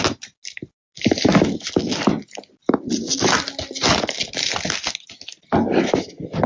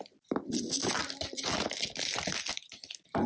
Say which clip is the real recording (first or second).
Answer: first